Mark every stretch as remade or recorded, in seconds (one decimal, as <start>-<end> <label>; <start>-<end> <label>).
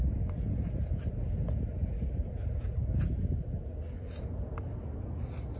0.0-5.6 recorded